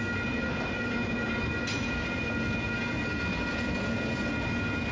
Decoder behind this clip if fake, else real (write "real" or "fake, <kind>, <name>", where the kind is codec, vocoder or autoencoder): real